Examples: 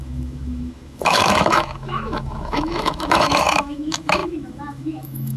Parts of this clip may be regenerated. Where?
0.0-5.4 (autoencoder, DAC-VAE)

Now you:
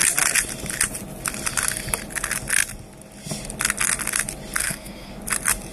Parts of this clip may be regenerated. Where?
4.6-5.1 (codec, SNAC)

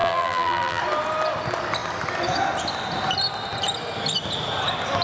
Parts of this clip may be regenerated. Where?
0.0-0.8 (vocoder, BigVGAN v2)

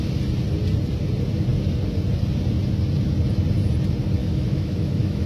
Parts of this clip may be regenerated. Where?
4.2-5.3 (autoencoder, DAC-VAE)